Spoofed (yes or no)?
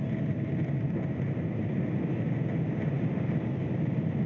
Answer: no